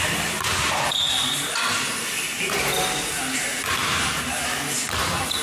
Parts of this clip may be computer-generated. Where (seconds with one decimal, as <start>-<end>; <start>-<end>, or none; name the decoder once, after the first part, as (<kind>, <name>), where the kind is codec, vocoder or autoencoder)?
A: 3.5-4.2 (vocoder, BigVGAN v2)